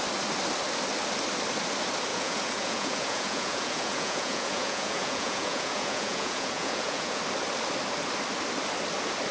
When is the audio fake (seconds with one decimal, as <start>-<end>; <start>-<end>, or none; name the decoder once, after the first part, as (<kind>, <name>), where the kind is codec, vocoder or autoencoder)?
2.1-7.2 (vocoder, Vocos)